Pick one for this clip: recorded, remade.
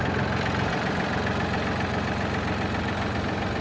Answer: recorded